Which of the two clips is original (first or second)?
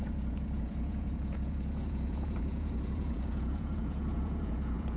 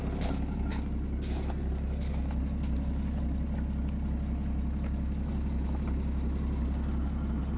second